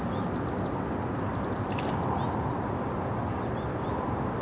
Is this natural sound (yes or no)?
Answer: yes